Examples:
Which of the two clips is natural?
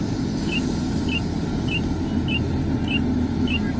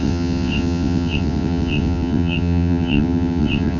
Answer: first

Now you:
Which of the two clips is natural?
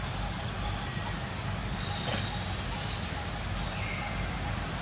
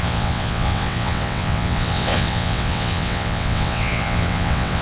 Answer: first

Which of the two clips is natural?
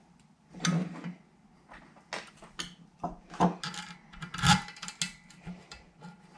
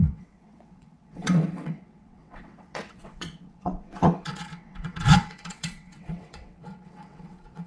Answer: first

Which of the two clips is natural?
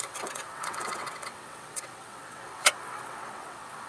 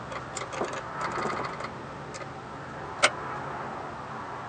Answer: second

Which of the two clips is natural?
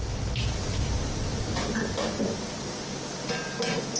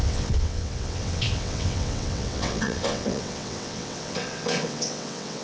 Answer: first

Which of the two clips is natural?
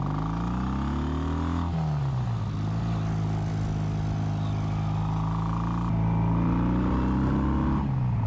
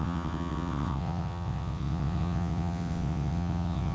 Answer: first